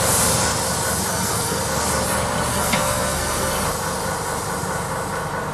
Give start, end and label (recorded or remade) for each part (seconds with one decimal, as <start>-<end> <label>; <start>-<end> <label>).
0.0-1.1 recorded; 1.1-1.6 remade; 1.6-2.5 recorded; 2.5-3.5 remade; 3.5-5.5 recorded